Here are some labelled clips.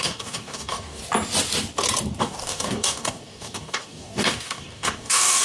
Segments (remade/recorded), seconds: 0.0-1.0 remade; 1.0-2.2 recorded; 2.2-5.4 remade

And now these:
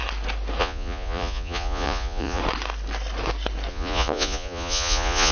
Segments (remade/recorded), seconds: 0.0-0.6 recorded; 0.6-2.4 remade; 2.4-3.7 recorded; 3.7-5.3 remade

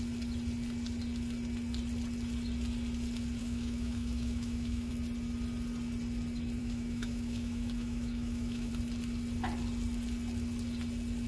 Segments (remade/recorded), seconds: 0.0-3.4 recorded; 3.4-4.9 remade; 4.9-6.6 recorded; 6.6-8.7 remade; 8.7-11.3 recorded

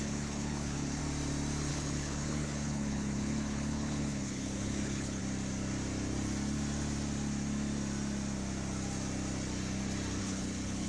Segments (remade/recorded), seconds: 0.0-1.0 remade; 1.0-1.7 recorded; 1.7-5.2 remade; 5.2-10.2 recorded; 10.2-10.9 remade